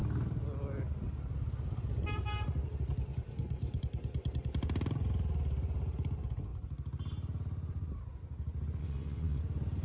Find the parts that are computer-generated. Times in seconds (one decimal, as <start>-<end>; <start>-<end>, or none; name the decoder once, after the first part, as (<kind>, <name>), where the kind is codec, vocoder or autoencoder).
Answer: 8.8-9.4 (vocoder, WaveNeXt)